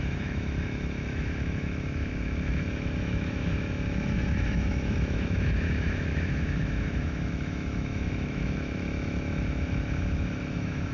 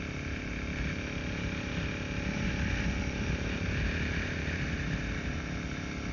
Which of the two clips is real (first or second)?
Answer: second